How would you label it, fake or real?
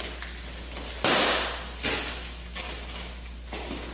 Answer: real